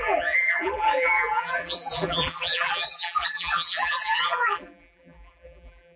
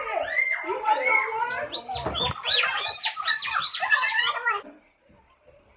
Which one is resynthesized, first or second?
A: first